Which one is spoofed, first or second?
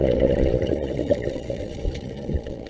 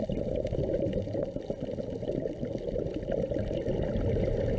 first